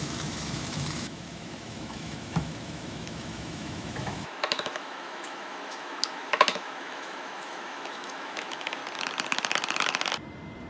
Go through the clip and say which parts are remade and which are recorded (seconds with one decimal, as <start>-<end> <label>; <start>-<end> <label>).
0.0-8.8 remade; 8.8-10.7 recorded